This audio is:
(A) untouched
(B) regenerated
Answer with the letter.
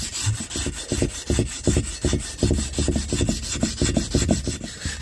A